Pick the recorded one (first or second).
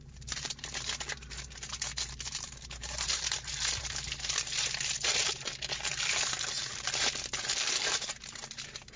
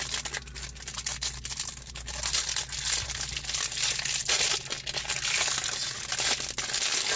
second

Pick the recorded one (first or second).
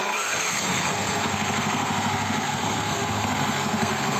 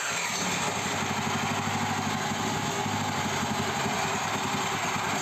second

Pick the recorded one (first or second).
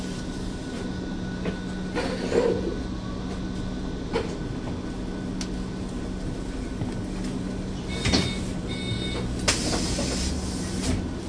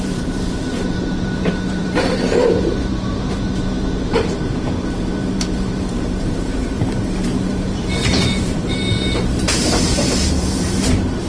first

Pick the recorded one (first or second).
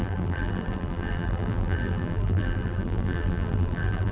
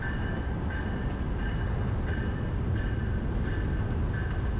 second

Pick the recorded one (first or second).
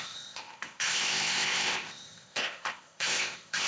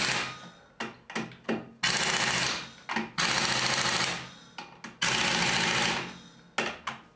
second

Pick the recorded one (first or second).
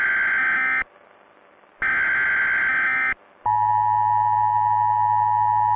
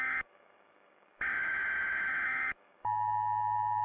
first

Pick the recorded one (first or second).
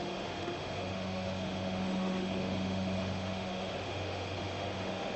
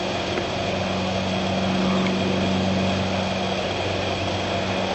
second